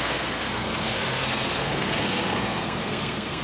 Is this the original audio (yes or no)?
no